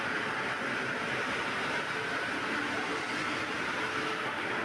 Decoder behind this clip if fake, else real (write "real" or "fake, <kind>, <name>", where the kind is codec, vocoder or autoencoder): real